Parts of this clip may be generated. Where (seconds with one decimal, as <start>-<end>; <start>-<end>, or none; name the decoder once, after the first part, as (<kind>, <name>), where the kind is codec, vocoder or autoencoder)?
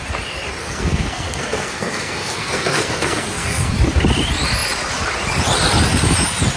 0.6-3.7 (codec, SNAC)